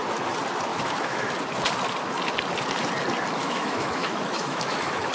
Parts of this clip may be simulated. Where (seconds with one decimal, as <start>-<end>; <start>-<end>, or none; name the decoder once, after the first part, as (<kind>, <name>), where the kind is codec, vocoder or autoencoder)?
0.7-1.3 (autoencoder, DAC-VAE); 3.4-5.1